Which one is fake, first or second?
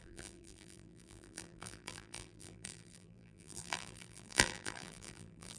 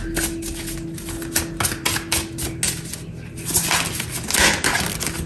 first